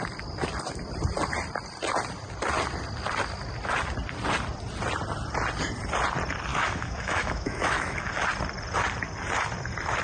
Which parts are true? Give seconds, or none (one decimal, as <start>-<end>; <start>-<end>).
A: 0.0-6.5; 8.1-10.0